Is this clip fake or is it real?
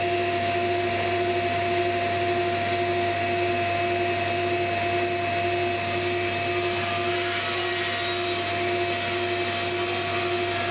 real